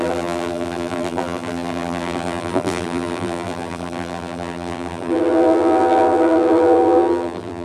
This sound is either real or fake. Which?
fake